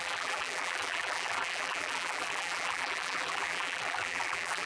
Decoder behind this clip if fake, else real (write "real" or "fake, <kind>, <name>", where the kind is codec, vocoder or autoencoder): fake, vocoder, BigVGAN v2